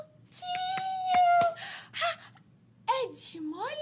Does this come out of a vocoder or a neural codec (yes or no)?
no